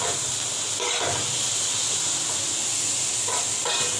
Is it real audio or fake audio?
real